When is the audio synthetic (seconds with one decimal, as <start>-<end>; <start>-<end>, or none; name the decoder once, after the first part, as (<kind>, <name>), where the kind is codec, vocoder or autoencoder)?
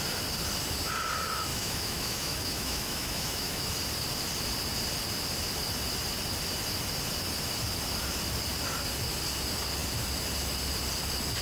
1.5-3.7 (autoencoder, DAC-VAE)